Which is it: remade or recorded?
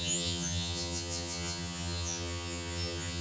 remade